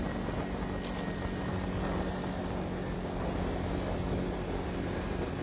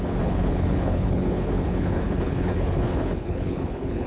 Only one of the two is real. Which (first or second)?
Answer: first